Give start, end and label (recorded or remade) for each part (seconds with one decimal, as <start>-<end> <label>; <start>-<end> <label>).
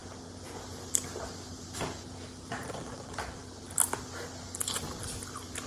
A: 0.0-5.7 recorded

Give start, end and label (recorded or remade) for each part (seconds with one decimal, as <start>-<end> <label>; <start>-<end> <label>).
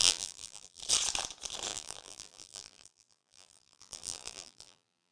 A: 0.0-0.8 remade; 0.8-1.7 recorded; 1.7-5.1 remade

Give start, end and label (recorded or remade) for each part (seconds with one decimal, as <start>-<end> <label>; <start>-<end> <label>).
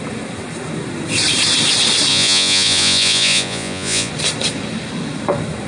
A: 0.0-2.1 recorded; 2.1-4.1 remade; 4.1-5.7 recorded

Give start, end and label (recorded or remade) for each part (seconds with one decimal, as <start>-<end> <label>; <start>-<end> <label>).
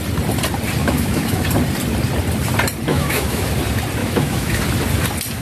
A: 0.0-0.8 recorded; 0.8-1.4 remade; 1.4-2.9 recorded; 2.9-3.5 remade; 3.5-4.0 recorded; 4.0-4.6 remade; 4.6-5.4 recorded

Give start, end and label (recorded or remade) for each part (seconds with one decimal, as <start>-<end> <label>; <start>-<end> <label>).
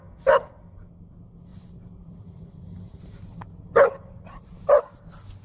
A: 0.0-1.5 recorded; 1.5-4.7 remade; 4.7-5.4 recorded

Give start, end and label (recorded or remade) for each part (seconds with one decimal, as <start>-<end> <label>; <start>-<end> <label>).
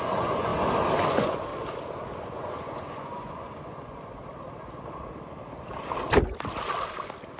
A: 0.0-0.5 remade; 0.5-1.0 recorded; 1.0-1.5 remade; 1.5-2.2 recorded; 2.2-4.2 remade; 4.2-7.4 recorded